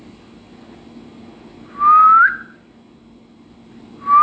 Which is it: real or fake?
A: real